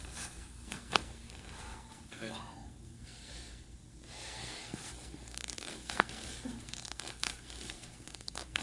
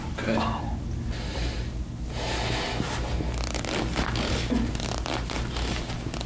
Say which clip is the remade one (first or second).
first